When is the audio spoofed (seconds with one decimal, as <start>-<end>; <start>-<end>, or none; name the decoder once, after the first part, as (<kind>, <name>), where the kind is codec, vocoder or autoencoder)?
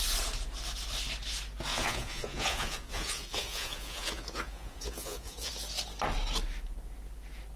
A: 1.7-5.5 (vocoder, Vocos)